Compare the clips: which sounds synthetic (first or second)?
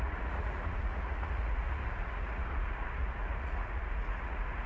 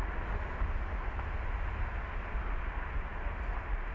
first